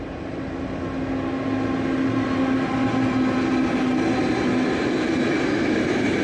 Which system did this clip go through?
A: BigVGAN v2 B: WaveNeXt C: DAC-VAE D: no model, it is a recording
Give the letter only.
D